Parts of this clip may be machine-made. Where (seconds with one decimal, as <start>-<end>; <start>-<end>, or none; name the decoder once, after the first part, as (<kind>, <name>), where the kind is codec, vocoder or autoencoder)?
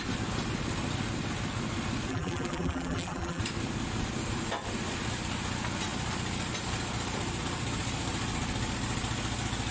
2.1-3.4 (vocoder, BigVGAN v2)